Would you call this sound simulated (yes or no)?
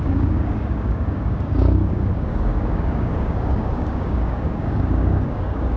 yes